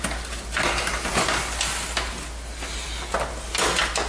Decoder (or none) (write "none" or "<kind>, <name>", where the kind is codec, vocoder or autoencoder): none